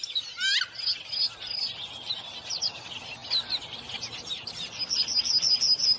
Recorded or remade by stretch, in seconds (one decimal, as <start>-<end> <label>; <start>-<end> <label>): 0.0-6.0 recorded